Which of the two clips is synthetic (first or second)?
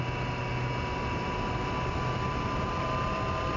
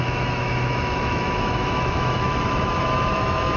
second